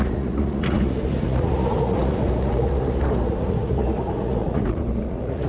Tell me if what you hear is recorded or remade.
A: remade